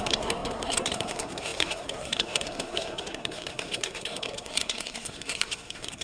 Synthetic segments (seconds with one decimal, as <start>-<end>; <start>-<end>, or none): 0.0-6.0